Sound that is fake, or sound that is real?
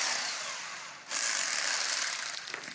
real